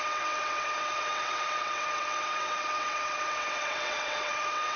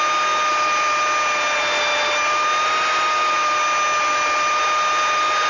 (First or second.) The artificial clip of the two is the first